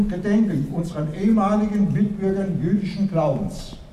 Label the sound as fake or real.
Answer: real